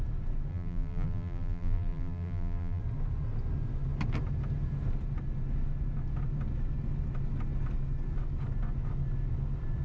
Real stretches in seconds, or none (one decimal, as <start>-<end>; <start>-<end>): 0.0-0.5; 2.8-9.8